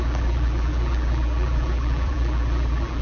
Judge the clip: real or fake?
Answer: fake